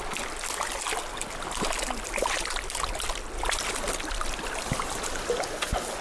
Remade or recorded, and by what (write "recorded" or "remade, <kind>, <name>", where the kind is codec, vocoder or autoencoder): recorded